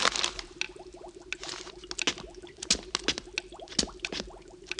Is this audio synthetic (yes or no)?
no